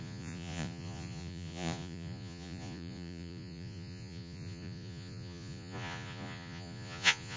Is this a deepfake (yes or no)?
yes